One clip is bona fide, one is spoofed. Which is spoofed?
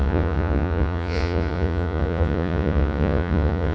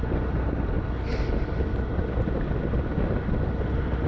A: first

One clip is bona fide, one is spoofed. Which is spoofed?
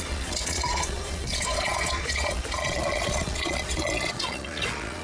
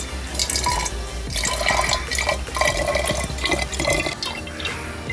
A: first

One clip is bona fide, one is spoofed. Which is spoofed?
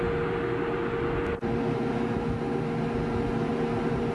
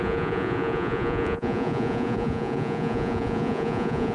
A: second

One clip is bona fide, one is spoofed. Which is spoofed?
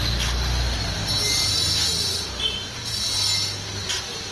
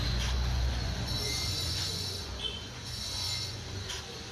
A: second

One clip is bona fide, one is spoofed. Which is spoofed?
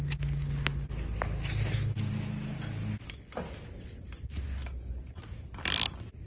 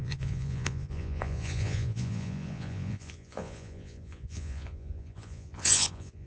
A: second